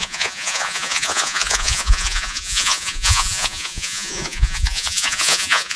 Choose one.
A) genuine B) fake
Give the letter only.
B